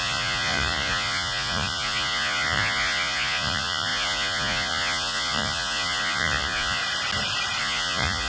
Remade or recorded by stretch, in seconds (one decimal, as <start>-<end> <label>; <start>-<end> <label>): 0.0-6.8 remade; 6.8-7.6 recorded; 7.6-8.3 remade